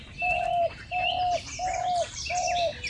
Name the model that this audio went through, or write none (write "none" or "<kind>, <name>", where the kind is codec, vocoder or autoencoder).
none